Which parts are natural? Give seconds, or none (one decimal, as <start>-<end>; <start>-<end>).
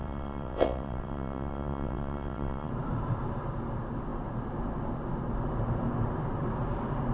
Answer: 2.7-7.1